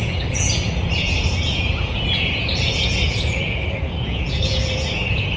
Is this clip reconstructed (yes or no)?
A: yes